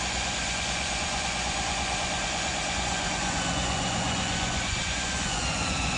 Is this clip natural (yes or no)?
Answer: no